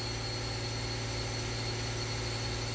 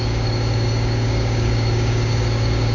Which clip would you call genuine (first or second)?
first